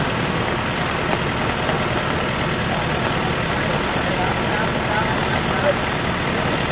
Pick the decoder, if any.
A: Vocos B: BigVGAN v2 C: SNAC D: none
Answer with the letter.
D